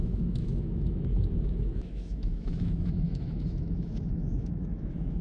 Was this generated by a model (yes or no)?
yes